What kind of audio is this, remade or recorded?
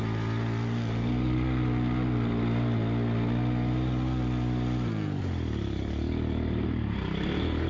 recorded